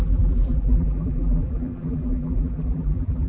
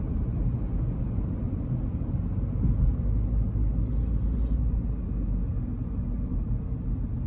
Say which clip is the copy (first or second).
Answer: first